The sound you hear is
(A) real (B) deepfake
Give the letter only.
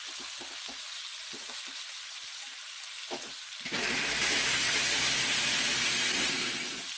A